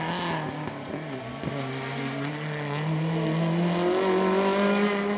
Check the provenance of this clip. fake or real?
real